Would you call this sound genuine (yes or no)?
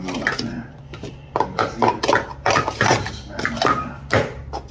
no